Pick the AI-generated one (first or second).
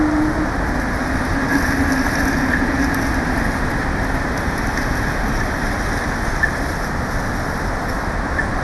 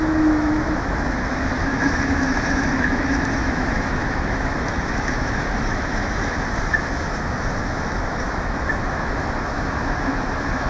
second